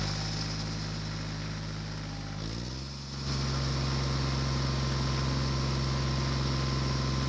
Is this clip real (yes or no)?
yes